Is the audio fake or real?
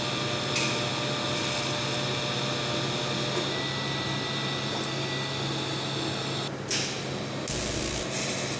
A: real